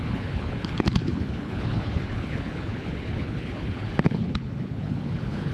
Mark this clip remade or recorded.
remade